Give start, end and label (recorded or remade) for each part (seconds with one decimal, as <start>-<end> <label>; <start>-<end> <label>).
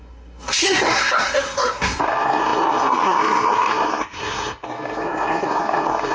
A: 0.0-6.1 remade